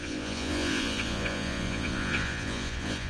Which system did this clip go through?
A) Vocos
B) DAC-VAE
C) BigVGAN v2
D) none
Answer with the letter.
A